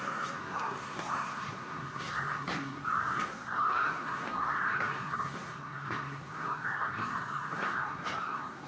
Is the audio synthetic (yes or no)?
yes